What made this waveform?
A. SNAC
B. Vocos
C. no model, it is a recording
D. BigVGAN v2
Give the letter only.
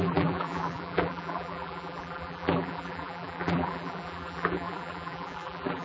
D